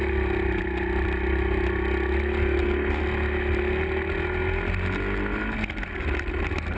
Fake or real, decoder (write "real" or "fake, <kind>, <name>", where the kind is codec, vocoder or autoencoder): real